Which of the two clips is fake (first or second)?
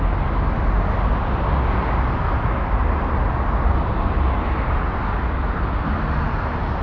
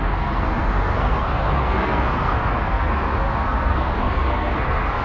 second